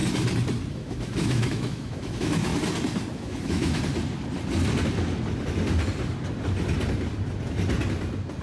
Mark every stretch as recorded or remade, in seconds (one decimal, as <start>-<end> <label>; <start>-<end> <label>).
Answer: 0.0-0.7 recorded; 0.7-2.5 remade; 2.5-3.1 recorded; 3.1-3.8 remade; 3.8-8.4 recorded